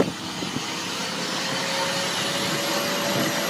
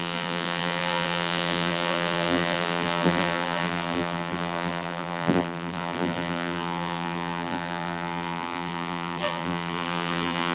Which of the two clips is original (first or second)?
first